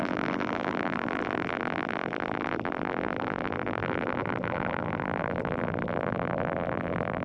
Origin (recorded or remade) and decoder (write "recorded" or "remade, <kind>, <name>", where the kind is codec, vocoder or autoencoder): remade, vocoder, BigVGAN v2